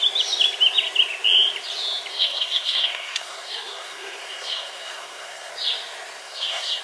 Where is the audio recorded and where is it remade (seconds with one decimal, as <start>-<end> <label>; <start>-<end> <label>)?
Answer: 0.0-2.1 recorded; 2.1-5.5 remade; 5.5-6.2 recorded; 6.2-6.8 remade

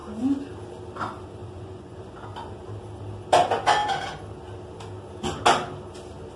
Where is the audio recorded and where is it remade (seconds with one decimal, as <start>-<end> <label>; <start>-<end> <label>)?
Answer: 0.0-1.4 recorded; 1.4-2.2 remade; 2.2-6.4 recorded

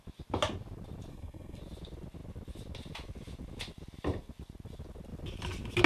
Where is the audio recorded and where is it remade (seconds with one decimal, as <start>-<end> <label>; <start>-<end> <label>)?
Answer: 0.0-1.1 recorded; 1.1-1.6 remade; 1.6-5.9 recorded

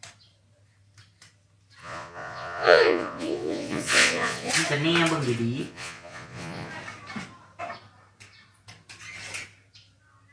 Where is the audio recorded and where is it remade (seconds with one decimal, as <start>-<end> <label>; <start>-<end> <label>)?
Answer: 0.0-1.8 recorded; 1.8-4.5 remade; 4.5-5.6 recorded; 5.6-6.7 remade; 6.7-10.3 recorded

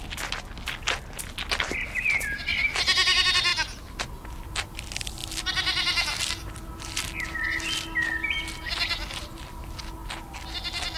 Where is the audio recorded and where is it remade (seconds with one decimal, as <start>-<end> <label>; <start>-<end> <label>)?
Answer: 0.0-11.0 recorded

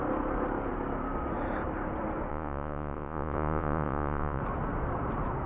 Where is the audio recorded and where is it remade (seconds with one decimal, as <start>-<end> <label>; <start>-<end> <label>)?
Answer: 0.0-2.3 recorded; 2.3-4.4 remade; 4.4-5.5 recorded

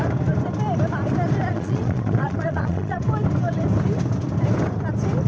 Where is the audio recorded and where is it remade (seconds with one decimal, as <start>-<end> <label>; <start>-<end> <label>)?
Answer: 0.0-1.5 recorded; 1.5-3.0 remade; 3.0-5.3 recorded

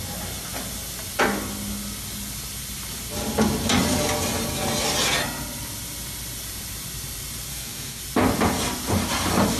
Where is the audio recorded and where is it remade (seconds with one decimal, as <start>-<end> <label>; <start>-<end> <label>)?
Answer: 0.0-7.5 recorded; 7.5-8.0 remade; 8.0-9.6 recorded